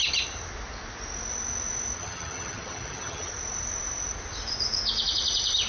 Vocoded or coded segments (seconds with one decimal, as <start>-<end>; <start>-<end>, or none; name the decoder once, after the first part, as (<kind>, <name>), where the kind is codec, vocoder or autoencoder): 2.0-3.3 (vocoder, HiFi-GAN)